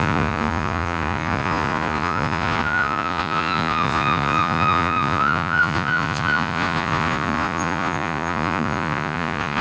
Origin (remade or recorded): remade